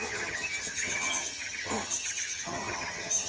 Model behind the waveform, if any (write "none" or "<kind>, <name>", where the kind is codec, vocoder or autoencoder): vocoder, HiFi-GAN